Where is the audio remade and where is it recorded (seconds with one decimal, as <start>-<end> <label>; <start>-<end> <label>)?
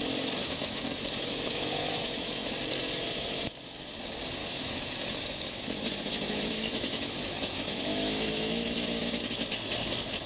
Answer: 0.0-0.4 recorded; 0.4-2.5 remade; 2.5-4.4 recorded; 4.4-9.2 remade; 9.2-10.3 recorded